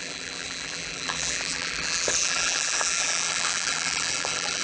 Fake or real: fake